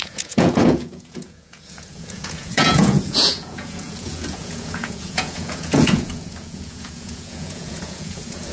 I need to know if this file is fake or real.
fake